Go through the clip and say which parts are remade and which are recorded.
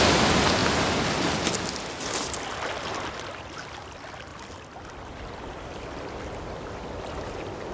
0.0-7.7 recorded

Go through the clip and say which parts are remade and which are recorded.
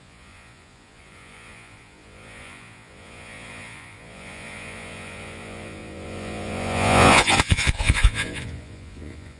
0.0-9.4 remade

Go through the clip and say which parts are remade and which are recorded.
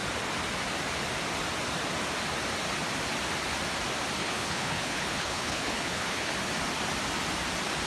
0.0-4.2 recorded; 4.2-6.3 remade; 6.3-7.9 recorded